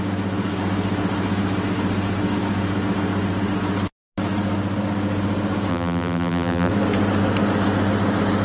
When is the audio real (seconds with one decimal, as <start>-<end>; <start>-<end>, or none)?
0.0-5.7; 6.7-8.4